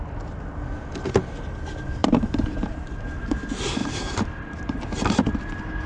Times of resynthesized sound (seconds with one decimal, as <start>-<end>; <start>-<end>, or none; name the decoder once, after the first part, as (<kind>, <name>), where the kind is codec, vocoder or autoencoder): 2.0-3.0 (vocoder, BigVGAN v2); 3.8-4.8